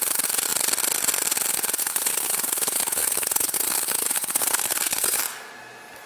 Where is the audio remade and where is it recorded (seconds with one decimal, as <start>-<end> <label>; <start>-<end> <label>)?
0.0-1.8 recorded; 1.8-5.2 remade; 5.2-6.1 recorded